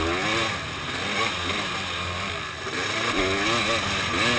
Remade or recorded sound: recorded